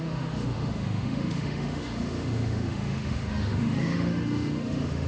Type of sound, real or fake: fake